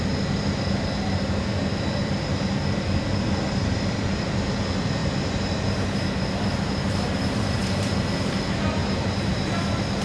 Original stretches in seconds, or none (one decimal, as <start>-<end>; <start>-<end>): 0.0-3.6; 4.5-5.0; 7.6-8.8; 9.5-10.0